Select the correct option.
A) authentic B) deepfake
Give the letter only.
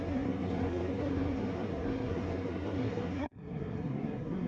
B